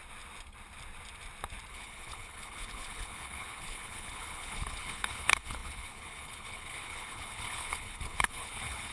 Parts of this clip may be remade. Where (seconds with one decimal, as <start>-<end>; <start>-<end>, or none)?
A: 1.7-8.9